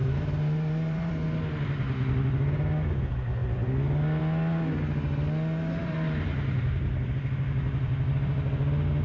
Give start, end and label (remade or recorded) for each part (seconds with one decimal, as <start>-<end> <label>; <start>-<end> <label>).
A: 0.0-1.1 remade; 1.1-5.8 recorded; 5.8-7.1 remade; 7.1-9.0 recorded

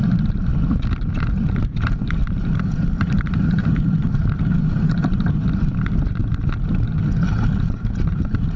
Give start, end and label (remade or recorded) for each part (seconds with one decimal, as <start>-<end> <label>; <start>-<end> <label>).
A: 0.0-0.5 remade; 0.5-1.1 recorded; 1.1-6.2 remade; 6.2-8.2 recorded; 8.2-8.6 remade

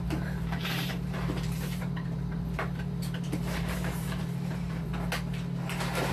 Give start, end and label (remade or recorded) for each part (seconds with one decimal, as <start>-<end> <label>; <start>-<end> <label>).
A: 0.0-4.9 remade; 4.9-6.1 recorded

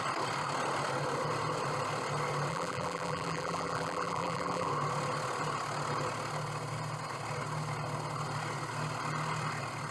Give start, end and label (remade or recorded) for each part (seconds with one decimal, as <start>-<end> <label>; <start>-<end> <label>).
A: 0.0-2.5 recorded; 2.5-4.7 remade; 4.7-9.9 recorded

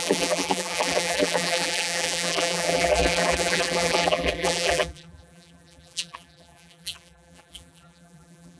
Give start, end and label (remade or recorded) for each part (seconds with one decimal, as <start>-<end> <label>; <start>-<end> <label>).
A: 0.0-8.6 remade